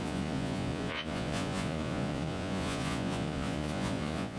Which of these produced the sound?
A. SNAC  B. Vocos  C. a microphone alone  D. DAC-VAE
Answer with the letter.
B